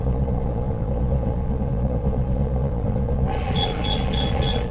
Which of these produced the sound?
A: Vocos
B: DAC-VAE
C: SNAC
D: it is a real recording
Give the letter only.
A